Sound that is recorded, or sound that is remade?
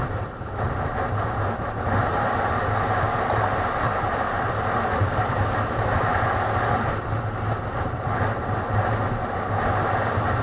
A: recorded